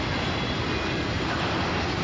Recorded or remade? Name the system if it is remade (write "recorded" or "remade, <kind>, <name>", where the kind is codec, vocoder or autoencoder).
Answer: recorded